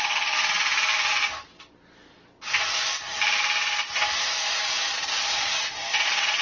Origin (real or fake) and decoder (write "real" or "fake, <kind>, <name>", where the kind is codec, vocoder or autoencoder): real